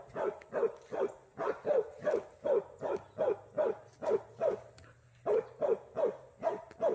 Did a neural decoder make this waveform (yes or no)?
no